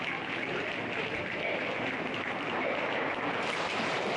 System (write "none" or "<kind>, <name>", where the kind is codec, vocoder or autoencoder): none